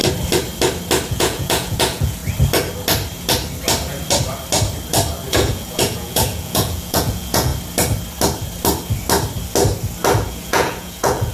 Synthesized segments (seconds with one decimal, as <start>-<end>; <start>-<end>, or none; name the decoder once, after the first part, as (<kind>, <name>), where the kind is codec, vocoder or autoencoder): 1.1-2.2 (vocoder, Vocos); 5.3-7.5; 10.3-11.3